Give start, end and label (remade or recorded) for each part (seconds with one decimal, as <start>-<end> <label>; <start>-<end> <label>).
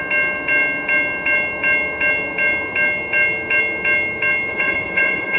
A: 0.0-4.5 recorded; 4.5-5.4 remade